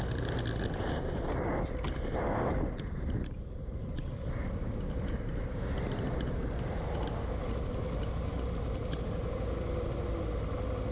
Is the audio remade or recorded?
recorded